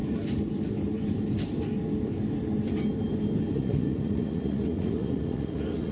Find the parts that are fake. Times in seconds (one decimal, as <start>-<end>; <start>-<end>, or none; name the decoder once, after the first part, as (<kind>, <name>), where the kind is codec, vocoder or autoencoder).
3.5-5.9 (vocoder, Vocos)